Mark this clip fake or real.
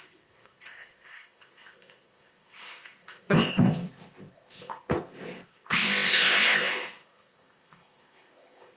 fake